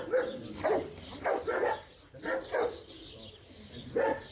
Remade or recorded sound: recorded